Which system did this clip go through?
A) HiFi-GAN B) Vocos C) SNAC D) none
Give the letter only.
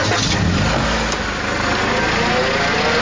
D